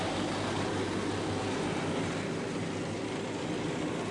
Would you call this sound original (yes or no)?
yes